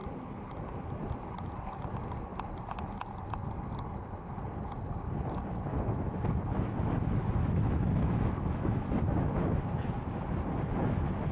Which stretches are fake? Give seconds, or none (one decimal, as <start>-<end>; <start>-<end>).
5.7-9.6